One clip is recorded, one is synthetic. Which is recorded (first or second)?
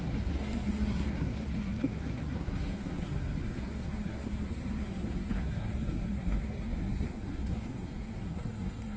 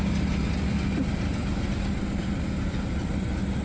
second